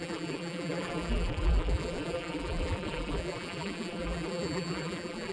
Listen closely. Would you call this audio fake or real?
fake